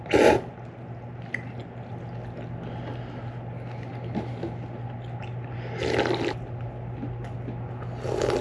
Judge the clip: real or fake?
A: real